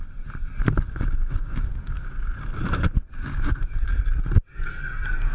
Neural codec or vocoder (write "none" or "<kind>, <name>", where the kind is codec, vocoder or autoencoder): none